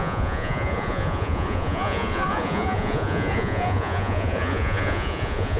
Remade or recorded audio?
remade